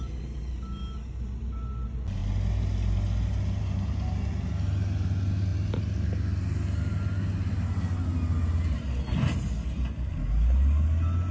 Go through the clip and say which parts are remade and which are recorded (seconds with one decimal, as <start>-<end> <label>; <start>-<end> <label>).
0.0-11.3 recorded